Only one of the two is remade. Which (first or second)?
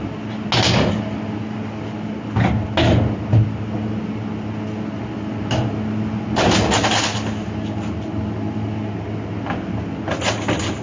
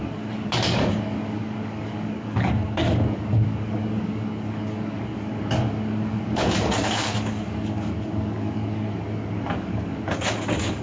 second